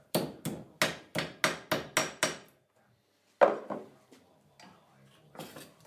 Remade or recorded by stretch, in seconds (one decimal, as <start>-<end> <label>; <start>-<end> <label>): 0.0-5.9 recorded